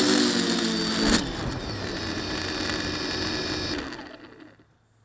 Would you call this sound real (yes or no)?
yes